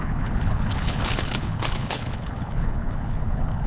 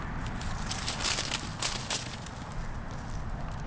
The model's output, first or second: first